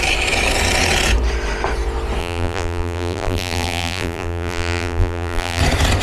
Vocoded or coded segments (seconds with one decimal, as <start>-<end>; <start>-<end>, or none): 2.2-5.6